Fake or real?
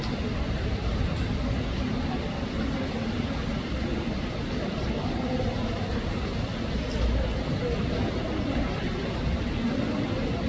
real